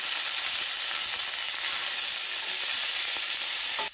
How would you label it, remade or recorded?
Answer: recorded